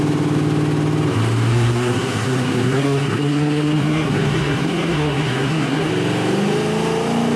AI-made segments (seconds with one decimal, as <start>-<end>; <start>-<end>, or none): 1.5-5.9